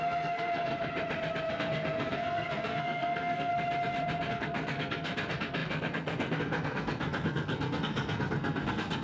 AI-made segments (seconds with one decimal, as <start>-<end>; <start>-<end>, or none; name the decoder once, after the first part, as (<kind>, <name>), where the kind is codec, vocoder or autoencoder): 0.0-0.7 (codec, SNAC); 1.5-3.5; 4.3-9.0